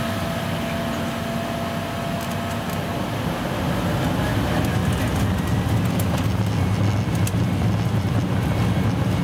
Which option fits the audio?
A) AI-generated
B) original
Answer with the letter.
B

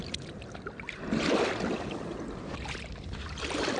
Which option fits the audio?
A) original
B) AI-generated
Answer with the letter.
A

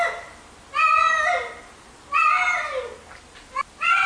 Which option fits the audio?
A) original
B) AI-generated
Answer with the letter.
A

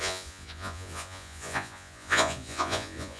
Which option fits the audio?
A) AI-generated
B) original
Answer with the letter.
A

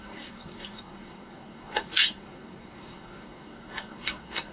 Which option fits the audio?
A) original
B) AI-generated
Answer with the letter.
B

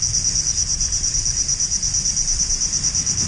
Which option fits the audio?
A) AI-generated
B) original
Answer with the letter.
B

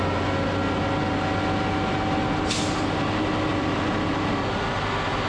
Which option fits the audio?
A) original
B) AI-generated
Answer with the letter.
A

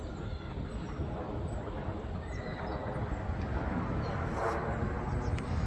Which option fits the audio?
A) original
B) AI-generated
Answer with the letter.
A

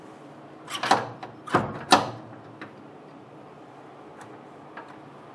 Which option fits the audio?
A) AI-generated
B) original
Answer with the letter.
B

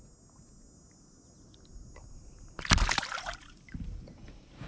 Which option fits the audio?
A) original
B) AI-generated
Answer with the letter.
A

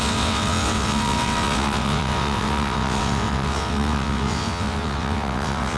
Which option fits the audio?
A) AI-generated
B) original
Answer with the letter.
A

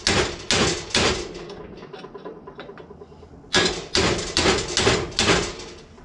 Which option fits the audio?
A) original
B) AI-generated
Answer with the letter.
A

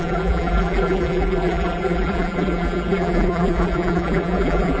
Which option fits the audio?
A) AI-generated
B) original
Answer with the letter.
A